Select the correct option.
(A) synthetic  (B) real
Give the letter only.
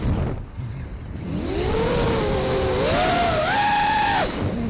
B